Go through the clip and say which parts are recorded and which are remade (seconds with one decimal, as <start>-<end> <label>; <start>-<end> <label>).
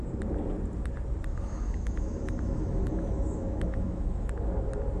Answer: 0.0-1.3 recorded; 1.3-4.3 remade; 4.3-5.0 recorded